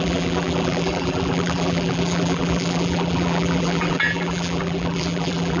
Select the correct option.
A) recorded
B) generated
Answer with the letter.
B